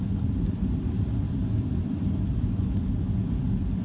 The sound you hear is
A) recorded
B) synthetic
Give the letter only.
A